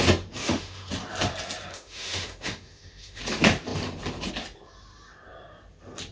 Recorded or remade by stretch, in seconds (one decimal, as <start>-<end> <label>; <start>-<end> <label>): 0.0-0.4 recorded; 0.4-0.9 remade; 0.9-1.7 recorded; 1.7-3.2 remade; 3.2-6.1 recorded